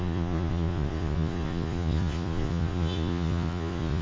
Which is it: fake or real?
fake